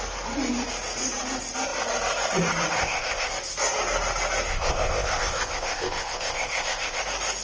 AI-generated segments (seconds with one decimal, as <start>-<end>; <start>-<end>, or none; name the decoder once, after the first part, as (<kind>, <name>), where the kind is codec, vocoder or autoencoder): 2.8-3.3 (codec, ZipCodec); 4.5-7.0

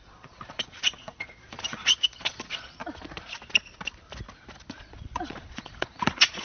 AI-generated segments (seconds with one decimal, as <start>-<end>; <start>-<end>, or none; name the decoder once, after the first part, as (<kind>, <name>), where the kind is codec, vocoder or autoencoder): 0.0-2.8 (vocoder, Vocos); 4.8-6.4

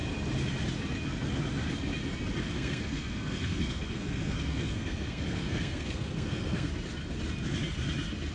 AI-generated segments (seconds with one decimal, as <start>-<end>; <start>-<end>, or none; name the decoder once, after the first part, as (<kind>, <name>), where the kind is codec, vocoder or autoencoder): 2.4-6.7 (codec, SNAC)

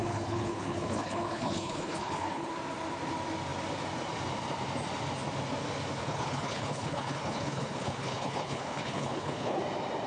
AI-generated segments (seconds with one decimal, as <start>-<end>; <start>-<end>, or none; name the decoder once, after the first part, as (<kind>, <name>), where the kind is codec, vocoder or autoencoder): 0.0-2.5 (codec, HILCodec); 6.0-9.6

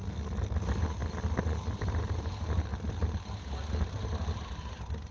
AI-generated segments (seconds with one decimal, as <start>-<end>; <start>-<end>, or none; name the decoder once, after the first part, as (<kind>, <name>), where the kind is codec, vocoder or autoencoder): none

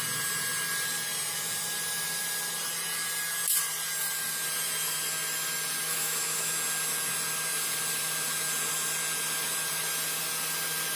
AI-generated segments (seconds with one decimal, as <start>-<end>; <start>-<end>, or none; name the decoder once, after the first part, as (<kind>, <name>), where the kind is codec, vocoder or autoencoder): 5.9-6.5 (autoencoder, DAC-VAE)

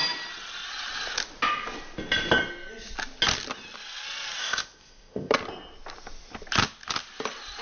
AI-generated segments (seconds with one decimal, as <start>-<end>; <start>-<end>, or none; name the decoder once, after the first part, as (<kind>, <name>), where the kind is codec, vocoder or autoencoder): 4.4-5.3 (codec, ZipCodec)

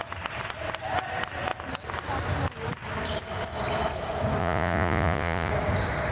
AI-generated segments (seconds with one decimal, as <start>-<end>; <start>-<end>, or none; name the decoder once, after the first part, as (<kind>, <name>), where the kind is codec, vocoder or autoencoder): 4.4-5.5 (vocoder, Vocos)